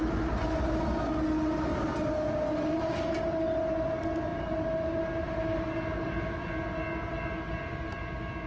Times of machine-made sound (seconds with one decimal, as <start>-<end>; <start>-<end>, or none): 2.7-3.2; 4.3-6.5